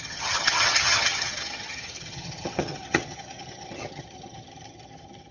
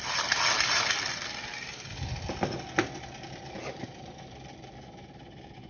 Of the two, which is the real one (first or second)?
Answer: second